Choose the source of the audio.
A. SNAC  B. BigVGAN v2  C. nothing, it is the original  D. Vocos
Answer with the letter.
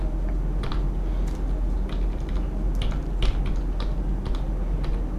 C